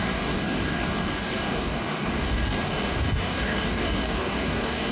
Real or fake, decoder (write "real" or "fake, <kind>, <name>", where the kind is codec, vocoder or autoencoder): fake, codec, DAC